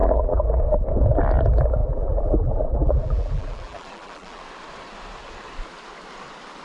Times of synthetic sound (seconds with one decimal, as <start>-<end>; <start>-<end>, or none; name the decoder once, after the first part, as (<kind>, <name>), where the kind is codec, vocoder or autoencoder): 0.0-0.6 (vocoder, BigVGAN v2); 1.8-4.4